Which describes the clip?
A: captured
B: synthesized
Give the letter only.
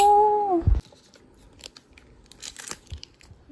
A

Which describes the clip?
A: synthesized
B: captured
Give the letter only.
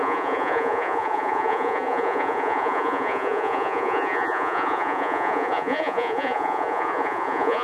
A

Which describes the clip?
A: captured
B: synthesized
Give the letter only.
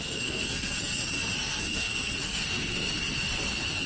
B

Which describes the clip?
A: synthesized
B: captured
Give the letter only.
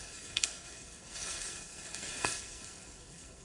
A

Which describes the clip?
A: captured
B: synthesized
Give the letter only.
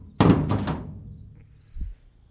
A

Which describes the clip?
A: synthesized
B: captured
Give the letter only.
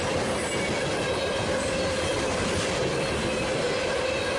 B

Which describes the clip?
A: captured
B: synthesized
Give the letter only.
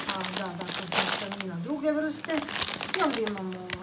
A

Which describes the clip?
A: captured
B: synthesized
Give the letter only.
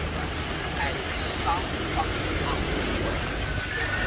A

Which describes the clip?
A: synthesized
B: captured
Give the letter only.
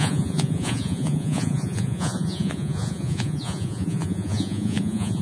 A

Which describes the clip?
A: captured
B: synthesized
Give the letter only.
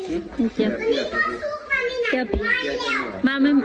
A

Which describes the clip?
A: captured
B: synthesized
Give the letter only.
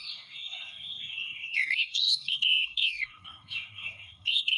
B